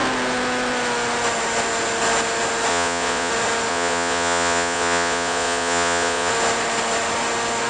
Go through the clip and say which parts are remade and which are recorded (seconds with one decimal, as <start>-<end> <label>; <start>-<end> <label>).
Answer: 0.0-2.7 recorded; 2.7-3.3 remade; 3.3-3.7 recorded; 3.7-6.3 remade; 6.3-7.7 recorded